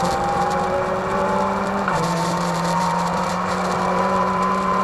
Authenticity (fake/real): fake